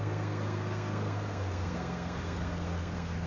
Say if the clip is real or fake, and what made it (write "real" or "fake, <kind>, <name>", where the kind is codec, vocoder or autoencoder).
fake, codec, SNAC